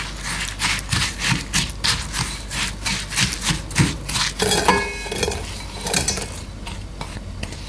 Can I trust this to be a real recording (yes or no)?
yes